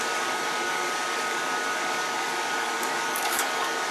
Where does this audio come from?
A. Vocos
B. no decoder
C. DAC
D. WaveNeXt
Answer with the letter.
C